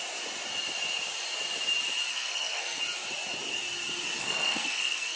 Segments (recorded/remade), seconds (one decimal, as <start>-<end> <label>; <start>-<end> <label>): 0.0-2.1 recorded; 2.1-2.8 remade; 2.8-4.2 recorded; 4.2-5.2 remade